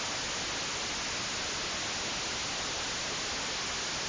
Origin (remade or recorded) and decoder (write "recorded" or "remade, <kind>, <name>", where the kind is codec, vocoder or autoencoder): recorded